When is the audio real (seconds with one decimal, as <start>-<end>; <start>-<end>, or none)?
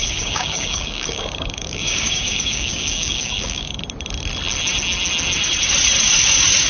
3.8-6.7